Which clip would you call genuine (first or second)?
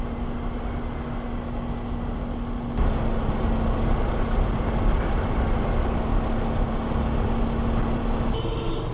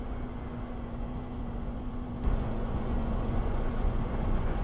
first